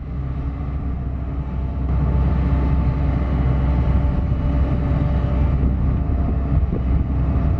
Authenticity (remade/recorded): recorded